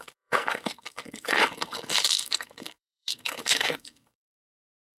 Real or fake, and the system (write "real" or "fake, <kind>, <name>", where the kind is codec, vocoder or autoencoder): fake, codec, SNAC